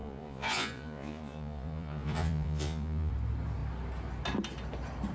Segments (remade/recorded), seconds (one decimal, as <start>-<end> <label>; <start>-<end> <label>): 0.0-3.1 remade; 3.1-5.1 recorded